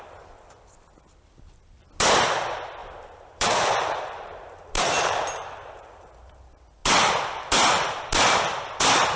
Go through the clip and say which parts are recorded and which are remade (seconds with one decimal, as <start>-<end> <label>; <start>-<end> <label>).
0.0-2.8 recorded; 2.8-6.1 remade; 6.1-9.2 recorded